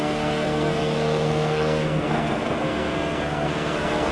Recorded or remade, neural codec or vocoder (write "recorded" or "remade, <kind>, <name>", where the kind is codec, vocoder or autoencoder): remade, codec, SNAC